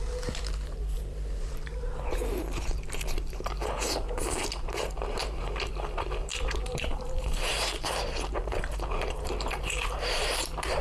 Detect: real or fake fake